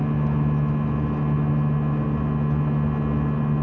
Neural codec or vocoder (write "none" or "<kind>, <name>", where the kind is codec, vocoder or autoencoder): none